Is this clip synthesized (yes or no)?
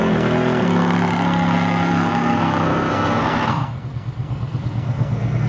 yes